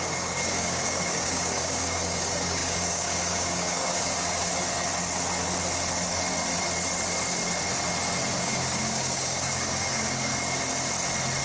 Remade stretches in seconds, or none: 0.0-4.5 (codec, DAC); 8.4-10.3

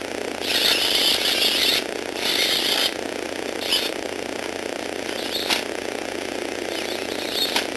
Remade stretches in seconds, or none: none

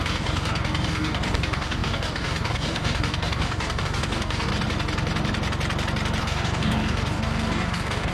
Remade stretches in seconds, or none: 0.0-4.5 (codec, DAC); 6.2-8.1

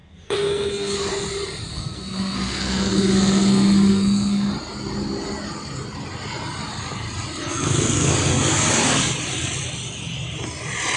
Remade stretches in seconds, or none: 0.0-1.1 (codec, SNAC); 1.7-4.5; 7.5-8.1

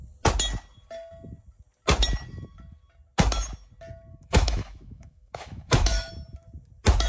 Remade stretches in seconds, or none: 4.1-6.1 (autoencoder, DAC-VAE)

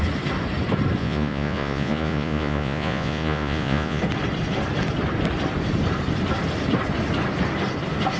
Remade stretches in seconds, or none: 1.0-4.0 (vocoder, Vocos)

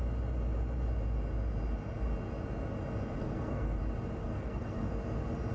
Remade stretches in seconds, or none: 3.2-3.8 (codec, SNAC); 4.2-4.9

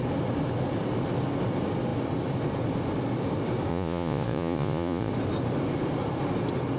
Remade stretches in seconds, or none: 3.7-5.1 (vocoder, Vocos)